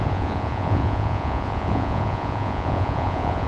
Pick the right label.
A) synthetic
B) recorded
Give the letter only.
A